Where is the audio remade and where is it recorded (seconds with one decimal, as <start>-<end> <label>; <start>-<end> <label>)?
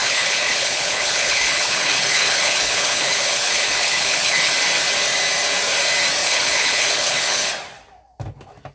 0.0-4.5 remade; 4.5-6.2 recorded; 6.2-7.5 remade; 7.5-8.7 recorded